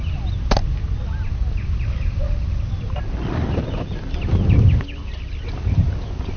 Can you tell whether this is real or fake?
real